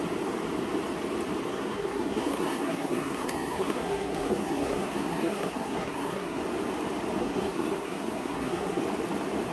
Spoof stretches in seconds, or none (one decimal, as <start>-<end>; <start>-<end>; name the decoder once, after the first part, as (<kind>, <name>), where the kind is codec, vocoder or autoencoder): 1.5-6.4 (codec, SNAC); 7.2-8.8